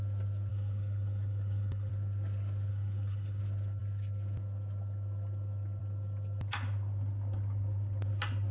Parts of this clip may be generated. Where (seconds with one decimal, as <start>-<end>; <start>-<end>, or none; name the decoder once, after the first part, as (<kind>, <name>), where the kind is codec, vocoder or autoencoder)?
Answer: 0.5-1.9 (codec, HILCodec); 2.7-3.4